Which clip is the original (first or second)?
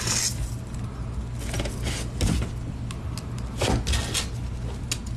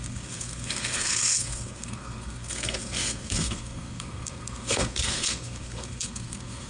first